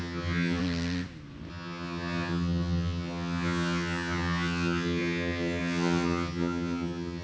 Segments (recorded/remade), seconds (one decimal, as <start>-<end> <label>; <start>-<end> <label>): 0.0-0.6 remade; 0.6-1.5 recorded; 1.5-7.2 remade